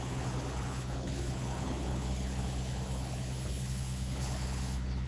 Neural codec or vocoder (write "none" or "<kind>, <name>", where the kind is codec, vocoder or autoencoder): codec, HILCodec